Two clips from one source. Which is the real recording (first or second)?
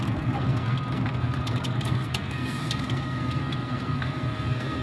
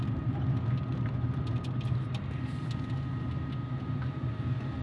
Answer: second